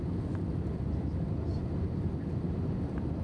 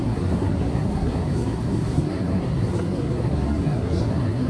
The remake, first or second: second